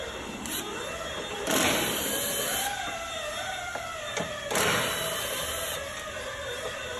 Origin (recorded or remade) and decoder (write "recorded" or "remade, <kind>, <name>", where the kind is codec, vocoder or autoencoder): recorded